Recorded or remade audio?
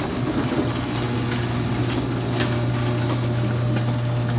recorded